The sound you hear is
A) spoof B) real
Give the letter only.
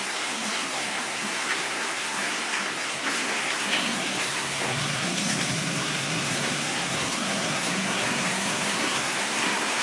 A